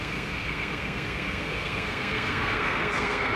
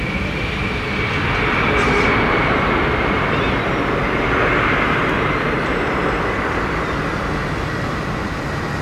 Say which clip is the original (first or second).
second